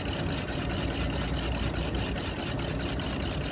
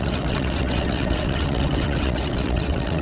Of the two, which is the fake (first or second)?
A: second